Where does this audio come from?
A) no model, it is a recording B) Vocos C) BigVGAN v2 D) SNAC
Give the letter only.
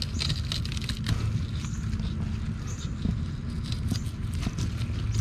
A